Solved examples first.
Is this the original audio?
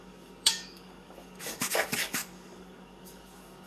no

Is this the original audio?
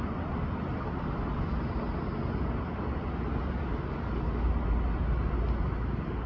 yes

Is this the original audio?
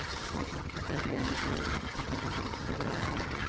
no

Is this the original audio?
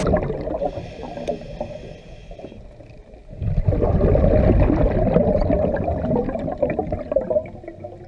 yes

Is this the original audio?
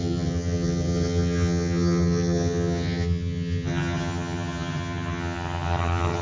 no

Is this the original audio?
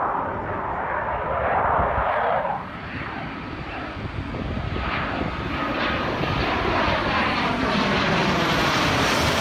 yes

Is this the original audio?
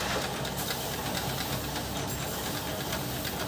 no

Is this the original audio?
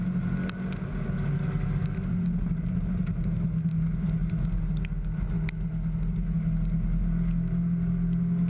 yes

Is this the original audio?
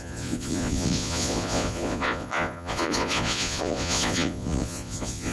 no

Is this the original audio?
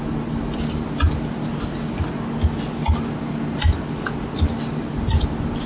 yes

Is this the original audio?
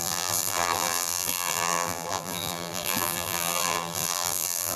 no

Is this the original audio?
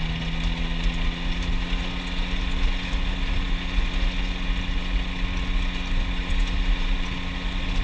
yes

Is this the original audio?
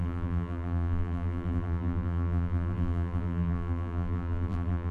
no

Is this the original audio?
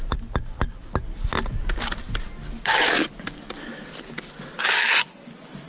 yes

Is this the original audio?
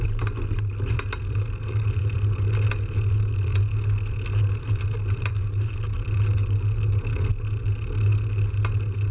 yes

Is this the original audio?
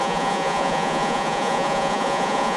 no